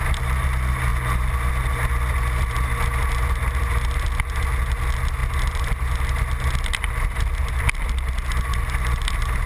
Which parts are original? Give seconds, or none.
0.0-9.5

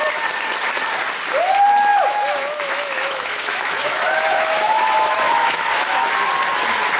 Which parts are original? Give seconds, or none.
0.0-1.9; 6.1-7.0

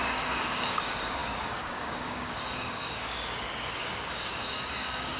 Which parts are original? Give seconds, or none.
none